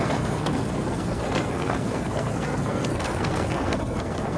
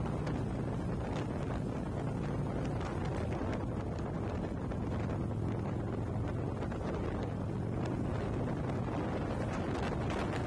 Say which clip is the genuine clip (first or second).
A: second